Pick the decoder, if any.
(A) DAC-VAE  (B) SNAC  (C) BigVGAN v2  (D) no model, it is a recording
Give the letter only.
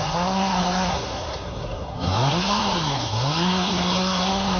B